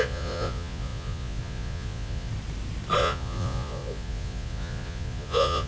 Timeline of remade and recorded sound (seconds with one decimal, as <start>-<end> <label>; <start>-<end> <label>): 0.0-2.3 remade; 2.3-3.0 recorded; 3.0-5.7 remade